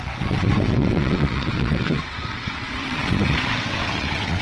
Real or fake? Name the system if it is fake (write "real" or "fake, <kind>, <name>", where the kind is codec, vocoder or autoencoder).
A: fake, vocoder, WaveNeXt